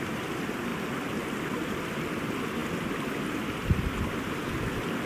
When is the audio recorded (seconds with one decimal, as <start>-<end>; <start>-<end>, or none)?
0.0-5.1